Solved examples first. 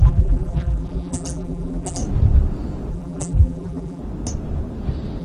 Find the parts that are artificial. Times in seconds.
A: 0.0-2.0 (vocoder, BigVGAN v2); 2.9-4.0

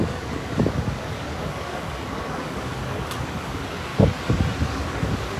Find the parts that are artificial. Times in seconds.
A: 0.0-3.9 (codec, DAC); 4.7-5.4